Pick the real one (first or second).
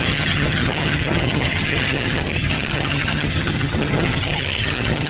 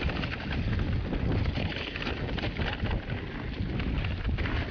second